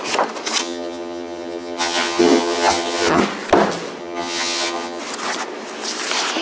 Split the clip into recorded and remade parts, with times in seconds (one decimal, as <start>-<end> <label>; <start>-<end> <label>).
0.0-0.6 recorded; 0.6-3.2 remade; 3.2-4.0 recorded; 4.0-5.0 remade; 5.0-6.4 recorded